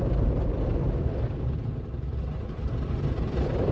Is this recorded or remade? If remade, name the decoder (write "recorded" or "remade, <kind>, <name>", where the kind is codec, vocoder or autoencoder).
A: remade, vocoder, BigVGAN v2